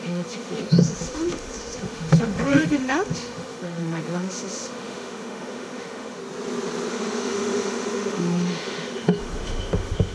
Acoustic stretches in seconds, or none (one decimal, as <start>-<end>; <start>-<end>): 6.2-6.9